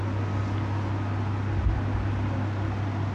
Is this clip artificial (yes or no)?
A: no